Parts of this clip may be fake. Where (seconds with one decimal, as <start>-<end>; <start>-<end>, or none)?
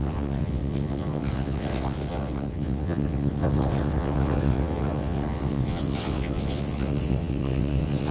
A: 0.0-8.1